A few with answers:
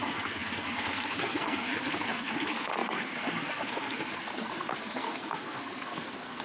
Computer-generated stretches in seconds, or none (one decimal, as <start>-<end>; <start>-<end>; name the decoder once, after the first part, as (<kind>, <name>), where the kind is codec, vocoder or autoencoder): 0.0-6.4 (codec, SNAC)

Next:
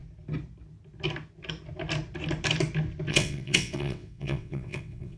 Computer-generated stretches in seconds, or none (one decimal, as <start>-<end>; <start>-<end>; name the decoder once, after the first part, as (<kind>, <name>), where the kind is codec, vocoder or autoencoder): 3.1-5.2 (vocoder, WaveNeXt)

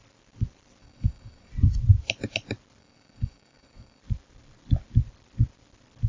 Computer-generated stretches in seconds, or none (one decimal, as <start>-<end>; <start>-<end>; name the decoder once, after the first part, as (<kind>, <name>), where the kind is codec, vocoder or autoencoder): 0.8-1.5 (codec, DAC); 2.8-4.0

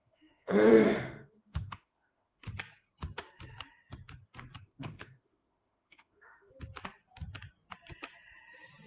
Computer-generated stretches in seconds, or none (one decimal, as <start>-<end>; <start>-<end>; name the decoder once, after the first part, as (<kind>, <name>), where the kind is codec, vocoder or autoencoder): 0.0-2.4 (autoencoder, DAC-VAE); 4.6-6.5

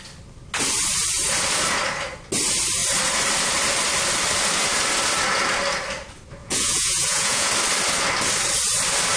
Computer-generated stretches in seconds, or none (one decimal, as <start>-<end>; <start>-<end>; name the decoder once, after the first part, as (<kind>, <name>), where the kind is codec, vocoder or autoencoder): 6.4-7.5 (vocoder, Vocos)